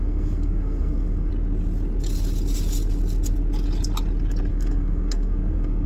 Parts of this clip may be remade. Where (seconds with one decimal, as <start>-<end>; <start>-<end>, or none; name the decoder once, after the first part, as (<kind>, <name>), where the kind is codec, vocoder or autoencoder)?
0.0-1.3 (codec, SNAC); 4.5-5.9